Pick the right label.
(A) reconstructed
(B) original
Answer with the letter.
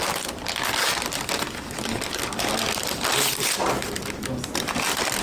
B